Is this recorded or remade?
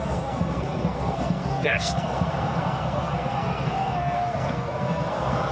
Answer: remade